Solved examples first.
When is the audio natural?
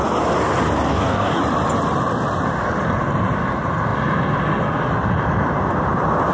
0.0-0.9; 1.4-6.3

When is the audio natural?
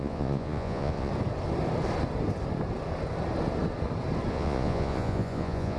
1.1-4.3